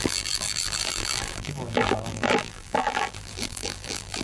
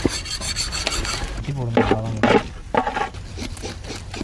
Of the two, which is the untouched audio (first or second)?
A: second